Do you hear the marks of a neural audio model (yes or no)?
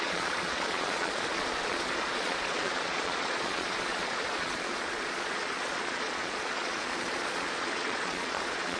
yes